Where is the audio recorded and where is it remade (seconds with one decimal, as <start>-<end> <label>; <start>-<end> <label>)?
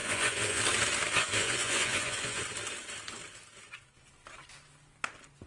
0.0-0.6 remade; 0.6-1.2 recorded; 1.2-2.4 remade; 2.4-5.5 recorded